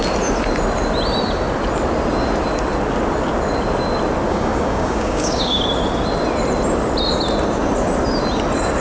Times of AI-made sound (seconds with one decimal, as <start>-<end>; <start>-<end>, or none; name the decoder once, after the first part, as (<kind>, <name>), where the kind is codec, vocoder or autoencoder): 4.3-5.6 (codec, DAC)